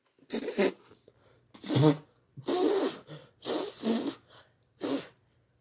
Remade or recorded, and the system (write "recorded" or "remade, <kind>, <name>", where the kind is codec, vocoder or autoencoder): recorded